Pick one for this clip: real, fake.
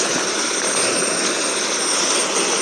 real